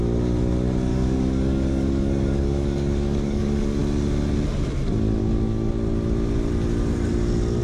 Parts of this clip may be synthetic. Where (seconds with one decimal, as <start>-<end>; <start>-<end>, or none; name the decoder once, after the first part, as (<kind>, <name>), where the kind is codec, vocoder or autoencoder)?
0.9-3.8 (codec, DAC); 5.2-5.7